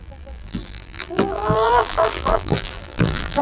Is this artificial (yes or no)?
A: yes